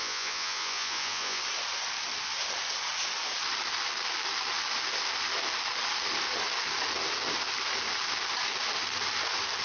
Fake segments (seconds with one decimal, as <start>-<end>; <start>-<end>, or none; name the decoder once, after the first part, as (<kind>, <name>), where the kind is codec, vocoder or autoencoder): 0.0-1.4 (vocoder, Vocos)